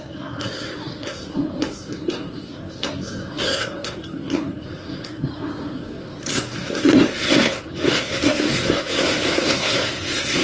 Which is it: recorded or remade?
remade